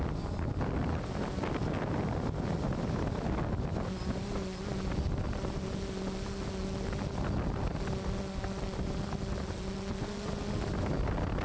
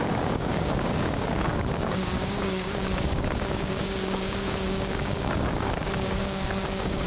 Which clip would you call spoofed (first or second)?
second